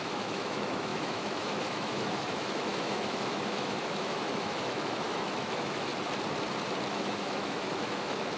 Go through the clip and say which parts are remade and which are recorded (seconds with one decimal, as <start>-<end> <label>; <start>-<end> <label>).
0.0-5.9 remade; 5.9-6.9 recorded; 6.9-8.4 remade